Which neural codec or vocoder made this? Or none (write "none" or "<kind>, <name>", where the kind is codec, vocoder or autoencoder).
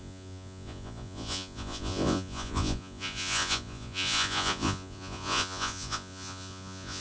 vocoder, Vocos